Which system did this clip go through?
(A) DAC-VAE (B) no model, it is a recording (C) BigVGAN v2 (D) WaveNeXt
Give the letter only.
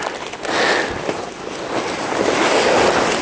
B